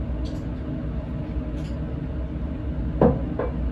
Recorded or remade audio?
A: recorded